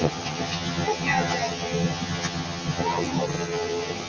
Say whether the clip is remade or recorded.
remade